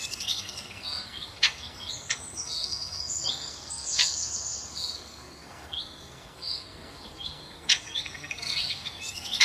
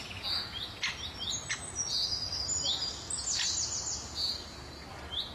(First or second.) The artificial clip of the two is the first